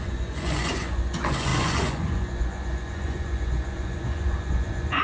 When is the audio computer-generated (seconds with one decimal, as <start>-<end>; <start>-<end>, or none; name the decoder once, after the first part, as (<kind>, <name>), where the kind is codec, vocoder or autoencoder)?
0.0-5.0 (vocoder, Vocos)